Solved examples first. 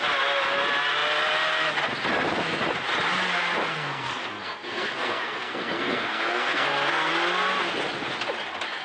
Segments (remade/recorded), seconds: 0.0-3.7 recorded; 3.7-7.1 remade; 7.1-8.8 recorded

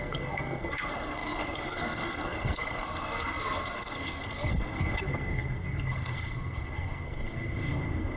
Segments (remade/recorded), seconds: 0.0-8.2 remade

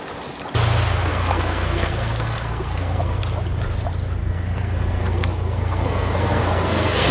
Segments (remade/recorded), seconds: 0.0-1.1 recorded; 1.1-3.2 remade; 3.2-4.2 recorded; 4.2-7.1 remade

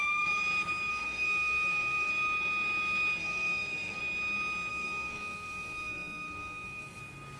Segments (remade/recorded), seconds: 0.0-0.9 recorded; 0.9-2.1 remade; 2.1-3.2 recorded; 3.2-4.0 remade; 4.0-4.7 recorded; 4.7-7.0 remade; 7.0-7.4 recorded

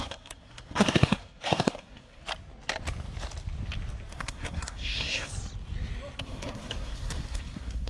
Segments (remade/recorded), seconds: 0.0-2.2 remade; 2.2-4.1 recorded; 4.1-5.3 remade; 5.3-6.2 recorded; 6.2-7.9 remade

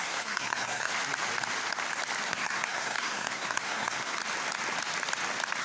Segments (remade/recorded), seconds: 0.0-0.9 remade; 0.9-2.3 recorded; 2.3-4.2 remade; 4.2-5.6 recorded

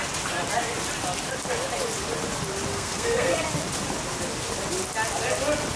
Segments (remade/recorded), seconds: 0.0-2.7 recorded; 2.7-3.4 remade; 3.4-5.8 recorded